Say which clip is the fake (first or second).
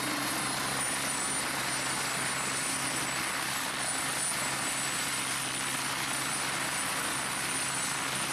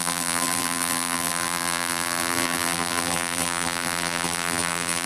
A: second